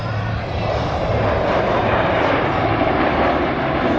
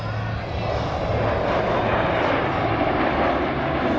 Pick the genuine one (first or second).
second